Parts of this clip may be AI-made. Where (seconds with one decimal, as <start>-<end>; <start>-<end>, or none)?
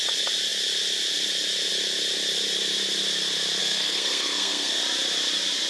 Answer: 3.6-4.8